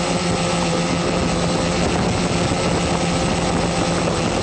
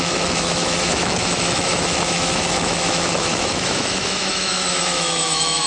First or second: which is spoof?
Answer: second